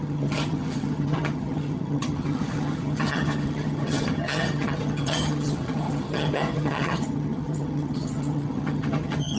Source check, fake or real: fake